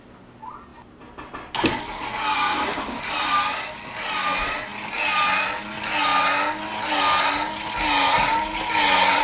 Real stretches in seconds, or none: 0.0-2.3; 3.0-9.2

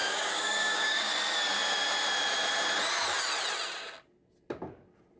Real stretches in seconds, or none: 1.1-5.2

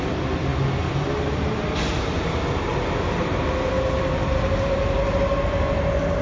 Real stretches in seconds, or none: 0.0-6.2

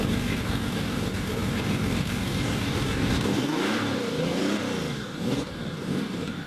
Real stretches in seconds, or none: 4.4-4.9